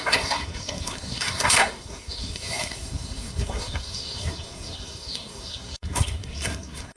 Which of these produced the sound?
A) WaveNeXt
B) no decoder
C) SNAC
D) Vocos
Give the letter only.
C